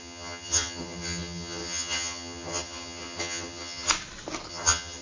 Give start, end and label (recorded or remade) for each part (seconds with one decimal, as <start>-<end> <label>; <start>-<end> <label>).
0.0-3.9 remade; 3.9-4.5 recorded; 4.5-5.0 remade